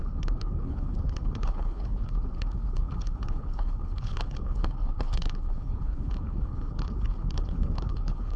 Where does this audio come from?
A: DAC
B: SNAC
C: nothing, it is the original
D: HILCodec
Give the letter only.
D